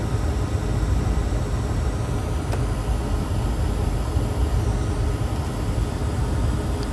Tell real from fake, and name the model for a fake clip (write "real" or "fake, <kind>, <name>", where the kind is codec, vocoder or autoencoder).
real